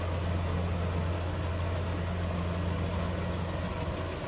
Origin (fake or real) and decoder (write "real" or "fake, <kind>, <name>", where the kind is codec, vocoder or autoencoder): real